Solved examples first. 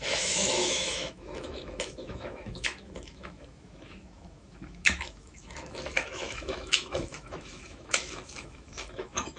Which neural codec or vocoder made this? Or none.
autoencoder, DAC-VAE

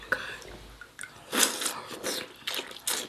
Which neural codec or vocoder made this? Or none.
none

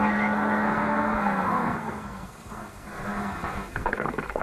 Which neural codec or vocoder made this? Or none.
codec, SNAC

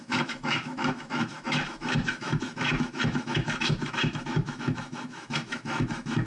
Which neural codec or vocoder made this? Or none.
autoencoder, DAC-VAE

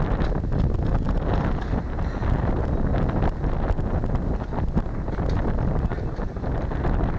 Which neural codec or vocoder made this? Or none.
none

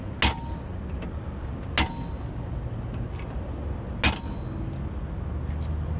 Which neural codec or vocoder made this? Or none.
none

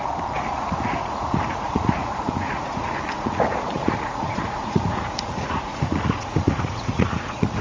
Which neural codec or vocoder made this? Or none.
vocoder, Vocos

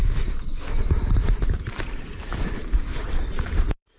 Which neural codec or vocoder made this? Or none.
vocoder, BigVGAN v2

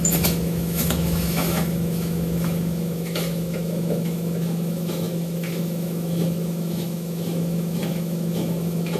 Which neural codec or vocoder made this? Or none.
autoencoder, DAC-VAE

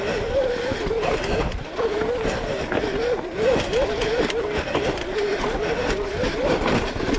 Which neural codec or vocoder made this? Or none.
none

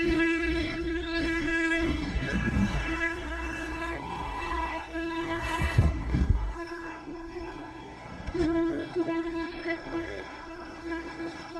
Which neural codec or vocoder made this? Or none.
codec, SNAC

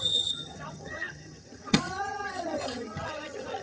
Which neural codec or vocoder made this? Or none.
vocoder, HiFi-GAN